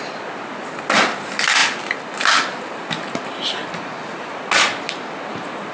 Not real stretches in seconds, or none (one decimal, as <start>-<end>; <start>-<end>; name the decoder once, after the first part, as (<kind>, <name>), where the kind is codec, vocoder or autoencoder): none